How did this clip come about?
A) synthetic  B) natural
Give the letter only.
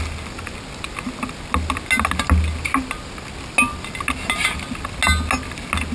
B